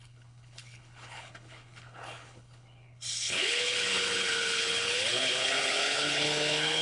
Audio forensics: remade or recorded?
remade